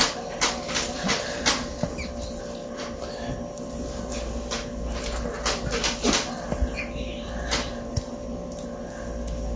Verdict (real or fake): real